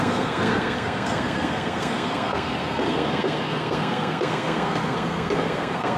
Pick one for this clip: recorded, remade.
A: remade